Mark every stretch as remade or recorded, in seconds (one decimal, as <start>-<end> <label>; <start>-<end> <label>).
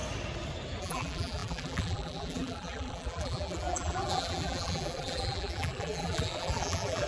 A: 0.0-0.8 recorded; 0.8-7.1 remade